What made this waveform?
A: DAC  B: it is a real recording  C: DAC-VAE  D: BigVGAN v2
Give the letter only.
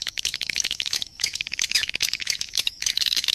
C